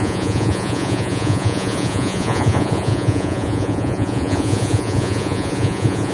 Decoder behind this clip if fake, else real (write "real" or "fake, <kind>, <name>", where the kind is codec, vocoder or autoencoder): fake, vocoder, Vocos